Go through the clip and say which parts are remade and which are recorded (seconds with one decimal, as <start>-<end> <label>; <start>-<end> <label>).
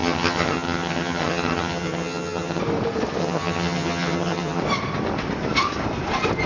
0.0-2.6 remade; 2.6-3.2 recorded; 3.2-4.6 remade; 4.6-6.5 recorded